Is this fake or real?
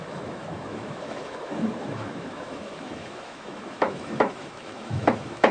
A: fake